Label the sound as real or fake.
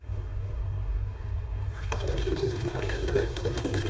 fake